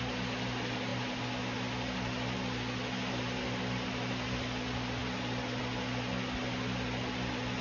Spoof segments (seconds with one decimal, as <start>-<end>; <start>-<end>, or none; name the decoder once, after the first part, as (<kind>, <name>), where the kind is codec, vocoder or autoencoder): none